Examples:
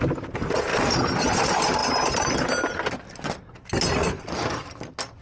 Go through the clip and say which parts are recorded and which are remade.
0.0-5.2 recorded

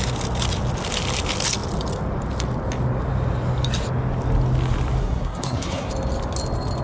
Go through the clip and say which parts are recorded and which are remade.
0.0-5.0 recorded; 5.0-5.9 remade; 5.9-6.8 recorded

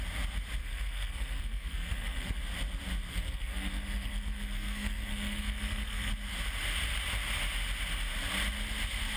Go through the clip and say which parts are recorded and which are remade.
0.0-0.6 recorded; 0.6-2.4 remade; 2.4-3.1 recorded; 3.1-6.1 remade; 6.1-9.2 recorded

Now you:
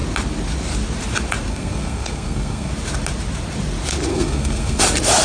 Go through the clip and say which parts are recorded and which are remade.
0.0-1.5 recorded; 1.5-2.7 remade; 2.7-4.1 recorded; 4.1-4.8 remade; 4.8-5.2 recorded